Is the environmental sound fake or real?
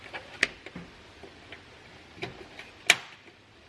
real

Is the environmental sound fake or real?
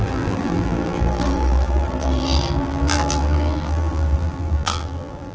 fake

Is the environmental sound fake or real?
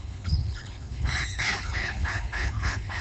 fake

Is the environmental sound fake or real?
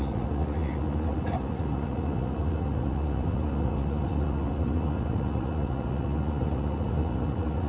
fake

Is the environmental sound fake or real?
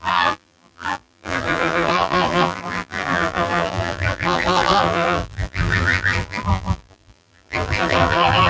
fake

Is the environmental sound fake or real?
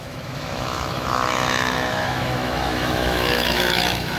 fake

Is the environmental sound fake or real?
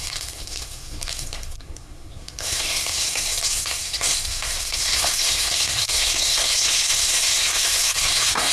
fake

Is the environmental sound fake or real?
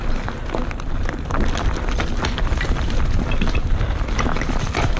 real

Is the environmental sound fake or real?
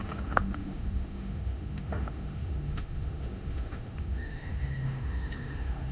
fake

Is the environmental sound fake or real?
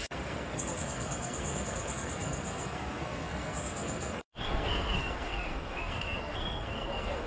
fake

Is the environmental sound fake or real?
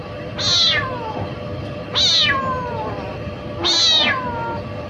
real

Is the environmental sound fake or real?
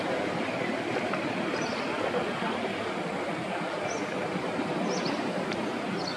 real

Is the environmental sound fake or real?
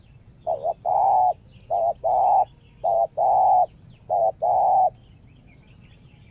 real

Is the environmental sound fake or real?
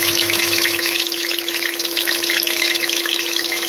fake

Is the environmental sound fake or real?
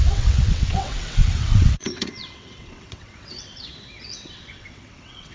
fake